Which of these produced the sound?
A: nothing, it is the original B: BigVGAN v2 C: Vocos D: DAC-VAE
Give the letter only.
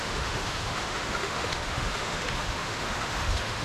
D